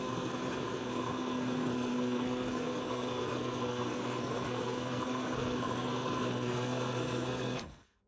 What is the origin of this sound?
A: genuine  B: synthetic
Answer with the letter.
B